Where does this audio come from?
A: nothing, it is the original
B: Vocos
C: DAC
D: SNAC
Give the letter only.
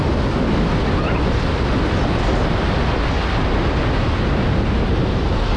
A